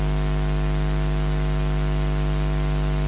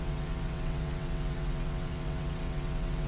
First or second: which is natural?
first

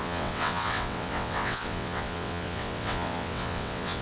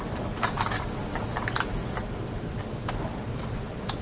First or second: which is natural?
second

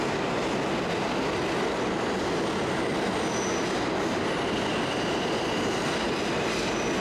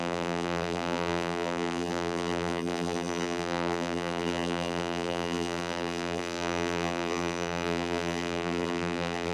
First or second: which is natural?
first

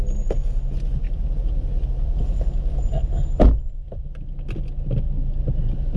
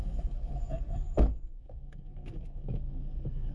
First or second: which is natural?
first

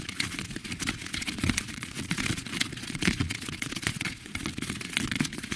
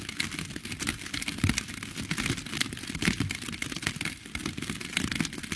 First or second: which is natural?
second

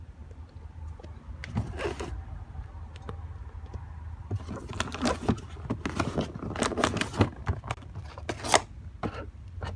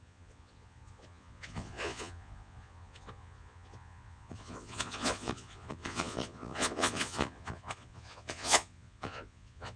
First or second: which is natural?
first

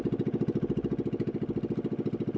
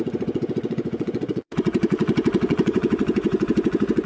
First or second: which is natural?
first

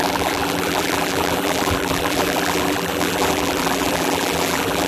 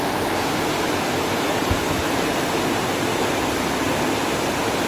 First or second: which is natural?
second